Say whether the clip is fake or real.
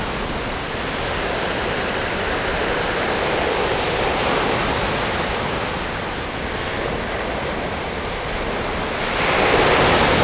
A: real